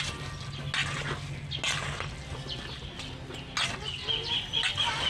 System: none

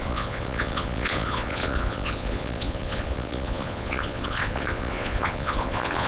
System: vocoder, Vocos